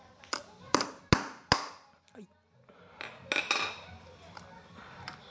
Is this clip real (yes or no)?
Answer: yes